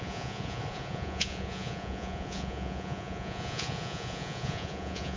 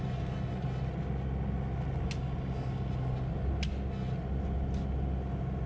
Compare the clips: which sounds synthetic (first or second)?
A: first